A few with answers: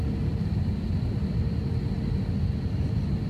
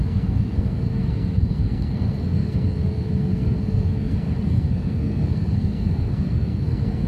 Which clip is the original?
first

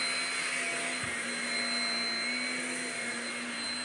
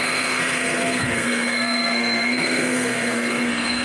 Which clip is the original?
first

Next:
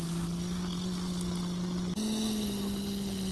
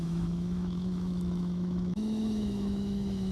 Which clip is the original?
first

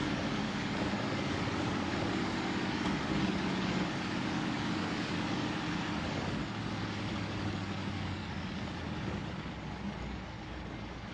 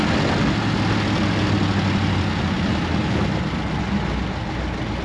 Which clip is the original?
second